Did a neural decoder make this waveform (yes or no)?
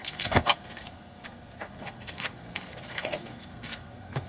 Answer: yes